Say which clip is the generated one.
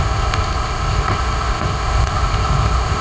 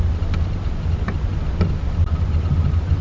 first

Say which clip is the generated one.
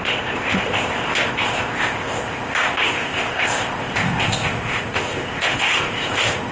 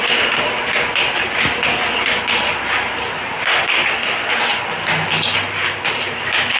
first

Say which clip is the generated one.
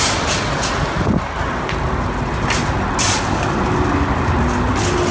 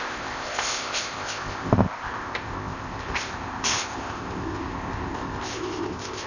second